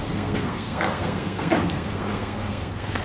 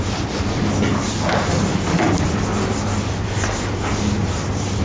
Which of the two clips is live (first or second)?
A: second